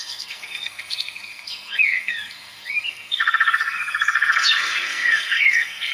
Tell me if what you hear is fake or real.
fake